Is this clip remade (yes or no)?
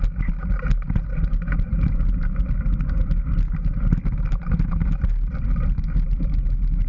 no